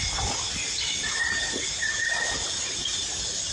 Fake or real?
real